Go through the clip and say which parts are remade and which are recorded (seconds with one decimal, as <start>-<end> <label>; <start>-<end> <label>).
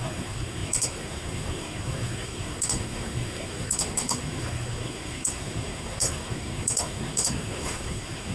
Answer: 0.0-8.3 remade